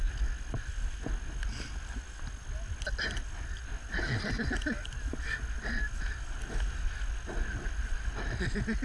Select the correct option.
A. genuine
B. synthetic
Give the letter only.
A